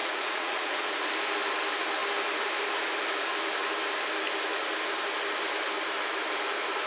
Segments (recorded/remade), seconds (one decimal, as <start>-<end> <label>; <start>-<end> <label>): 0.0-0.9 remade; 0.9-6.9 recorded